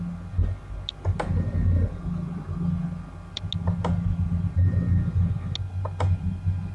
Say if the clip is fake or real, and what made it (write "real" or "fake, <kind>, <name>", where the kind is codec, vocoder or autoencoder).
real